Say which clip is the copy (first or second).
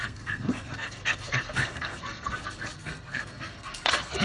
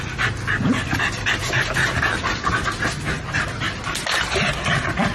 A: first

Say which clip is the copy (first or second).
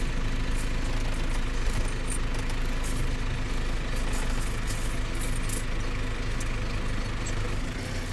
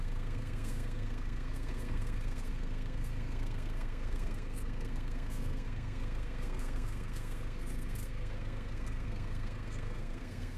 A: second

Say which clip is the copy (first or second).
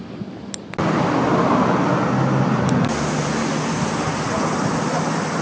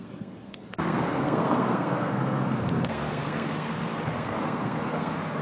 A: second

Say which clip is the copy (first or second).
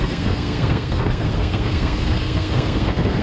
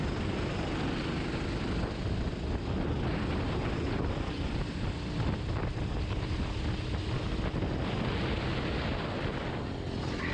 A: first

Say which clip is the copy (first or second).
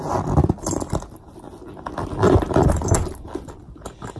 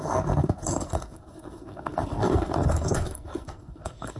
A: second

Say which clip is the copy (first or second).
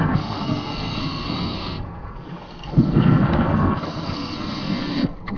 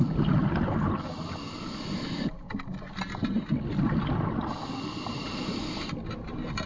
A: first